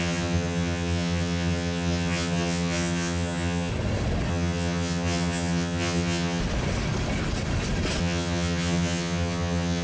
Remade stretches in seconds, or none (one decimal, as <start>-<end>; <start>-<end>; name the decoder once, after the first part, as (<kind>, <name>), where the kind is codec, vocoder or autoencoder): 0.0-3.7 (vocoder, HiFi-GAN); 4.3-6.4; 8.0-9.8